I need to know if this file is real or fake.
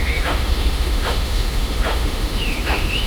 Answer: fake